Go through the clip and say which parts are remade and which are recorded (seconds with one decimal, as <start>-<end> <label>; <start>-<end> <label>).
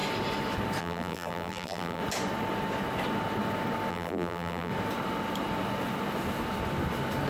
0.0-0.8 recorded; 0.8-2.0 remade; 2.0-3.9 recorded; 3.9-4.7 remade; 4.7-7.3 recorded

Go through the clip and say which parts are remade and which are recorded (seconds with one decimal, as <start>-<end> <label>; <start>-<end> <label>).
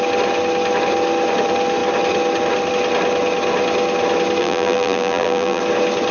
0.0-4.4 recorded; 4.4-5.6 remade; 5.6-6.1 recorded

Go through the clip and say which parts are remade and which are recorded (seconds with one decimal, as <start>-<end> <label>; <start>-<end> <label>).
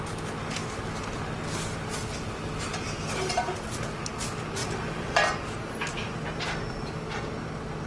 0.0-4.6 recorded; 4.6-5.2 remade; 5.2-7.9 recorded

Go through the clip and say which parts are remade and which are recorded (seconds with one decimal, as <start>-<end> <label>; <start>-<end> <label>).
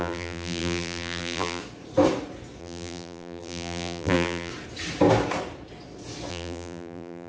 0.0-1.6 remade; 1.6-2.6 recorded; 2.6-4.5 remade; 4.5-6.3 recorded; 6.3-7.3 remade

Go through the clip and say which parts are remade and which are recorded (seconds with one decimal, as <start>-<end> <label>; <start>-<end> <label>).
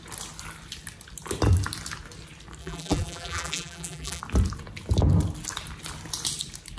0.0-2.6 recorded; 2.6-4.2 remade; 4.2-6.8 recorded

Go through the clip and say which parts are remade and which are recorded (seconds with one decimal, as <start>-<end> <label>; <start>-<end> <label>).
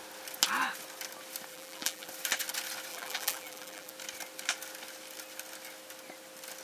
0.0-1.5 recorded; 1.5-2.1 remade; 2.1-2.9 recorded; 2.9-3.9 remade; 3.9-6.6 recorded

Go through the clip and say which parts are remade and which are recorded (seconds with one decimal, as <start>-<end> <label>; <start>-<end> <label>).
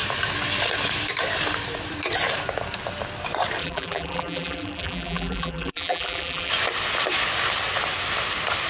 0.0-3.6 recorded; 3.6-6.5 remade; 6.5-8.7 recorded